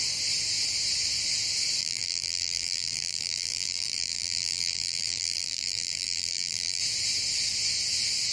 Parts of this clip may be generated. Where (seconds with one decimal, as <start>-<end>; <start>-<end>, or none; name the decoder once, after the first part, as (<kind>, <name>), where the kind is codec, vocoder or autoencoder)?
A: 1.8-6.8 (vocoder, BigVGAN v2)